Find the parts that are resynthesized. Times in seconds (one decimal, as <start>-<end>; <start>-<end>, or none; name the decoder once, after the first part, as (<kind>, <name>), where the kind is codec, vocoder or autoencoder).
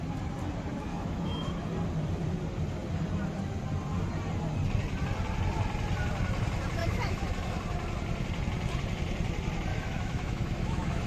0.9-1.5 (autoencoder, DAC-VAE); 6.8-7.3; 9.7-11.1